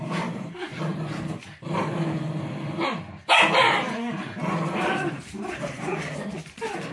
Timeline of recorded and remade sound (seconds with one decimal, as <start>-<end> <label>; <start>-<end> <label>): 0.0-3.2 remade; 3.2-4.2 recorded; 4.2-6.9 remade